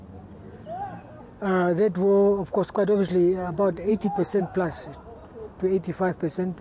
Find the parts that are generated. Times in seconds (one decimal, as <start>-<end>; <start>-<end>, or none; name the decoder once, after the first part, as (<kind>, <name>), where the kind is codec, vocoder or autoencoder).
3.9-4.4 (codec, SNAC)